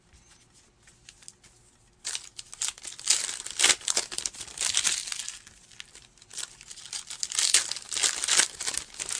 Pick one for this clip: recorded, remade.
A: recorded